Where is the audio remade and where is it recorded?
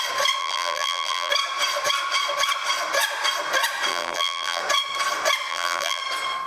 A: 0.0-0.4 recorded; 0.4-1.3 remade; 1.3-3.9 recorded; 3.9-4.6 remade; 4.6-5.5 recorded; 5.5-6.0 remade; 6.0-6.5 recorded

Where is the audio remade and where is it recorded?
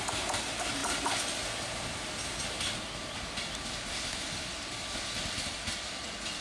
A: 0.0-6.4 recorded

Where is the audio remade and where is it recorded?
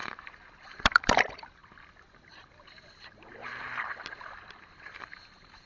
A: 0.0-1.6 remade; 1.6-5.0 recorded; 5.0-5.7 remade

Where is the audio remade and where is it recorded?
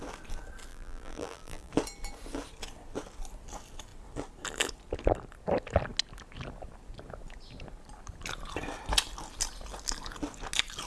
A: 0.0-0.7 recorded; 0.7-1.7 remade; 1.7-10.9 recorded